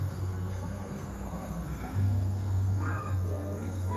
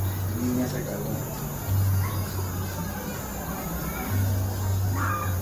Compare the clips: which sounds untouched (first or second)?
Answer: second